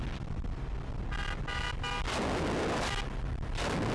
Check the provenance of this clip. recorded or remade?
recorded